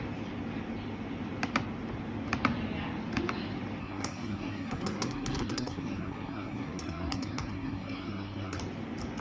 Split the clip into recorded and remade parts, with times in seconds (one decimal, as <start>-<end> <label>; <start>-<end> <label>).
0.0-3.8 recorded; 3.8-8.6 remade; 8.6-9.2 recorded